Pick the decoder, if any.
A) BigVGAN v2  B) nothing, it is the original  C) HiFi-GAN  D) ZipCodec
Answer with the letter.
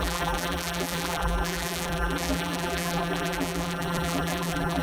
A